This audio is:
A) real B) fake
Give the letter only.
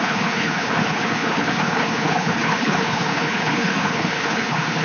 B